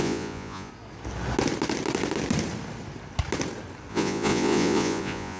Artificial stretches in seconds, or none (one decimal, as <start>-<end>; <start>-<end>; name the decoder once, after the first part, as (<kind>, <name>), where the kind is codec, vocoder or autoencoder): 0.0-0.7 (vocoder, Vocos); 3.9-5.4